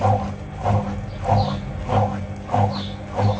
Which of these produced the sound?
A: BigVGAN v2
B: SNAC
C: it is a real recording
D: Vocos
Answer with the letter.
C